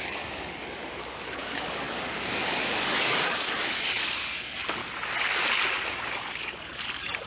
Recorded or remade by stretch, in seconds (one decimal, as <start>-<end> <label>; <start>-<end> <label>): 0.0-4.8 remade; 4.8-5.7 recorded; 5.7-7.3 remade